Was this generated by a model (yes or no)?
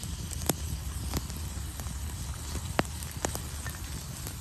no